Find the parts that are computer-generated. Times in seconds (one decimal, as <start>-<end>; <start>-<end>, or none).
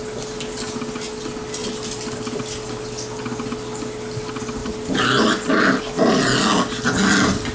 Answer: 4.6-5.8